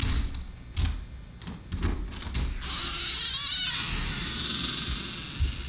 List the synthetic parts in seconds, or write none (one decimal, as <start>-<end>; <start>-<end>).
none